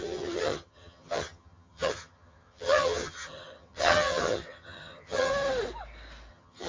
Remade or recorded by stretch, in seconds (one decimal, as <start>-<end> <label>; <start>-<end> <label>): 0.0-5.3 remade; 5.3-6.3 recorded; 6.3-6.7 remade